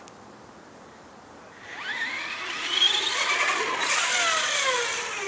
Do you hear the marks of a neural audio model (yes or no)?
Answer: no